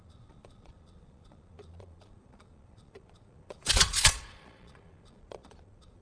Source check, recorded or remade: remade